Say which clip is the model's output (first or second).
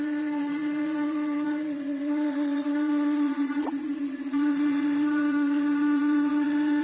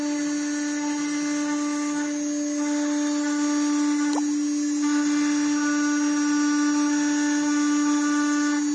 first